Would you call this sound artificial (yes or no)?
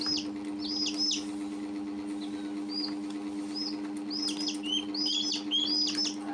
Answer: no